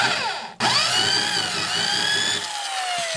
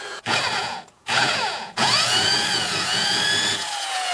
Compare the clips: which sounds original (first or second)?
first